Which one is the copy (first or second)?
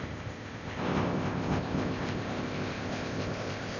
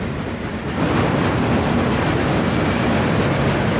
first